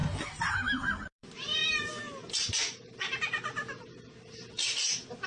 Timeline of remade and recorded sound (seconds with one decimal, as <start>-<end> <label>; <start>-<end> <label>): 0.0-1.6 remade; 1.6-4.5 recorded; 4.5-5.3 remade